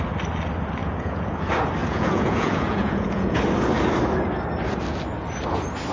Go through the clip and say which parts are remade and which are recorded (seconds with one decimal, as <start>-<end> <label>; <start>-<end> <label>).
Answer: 0.0-0.8 recorded; 0.8-1.4 remade; 1.4-1.8 recorded; 1.8-3.4 remade; 3.4-5.9 recorded